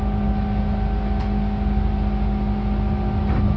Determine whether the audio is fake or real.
real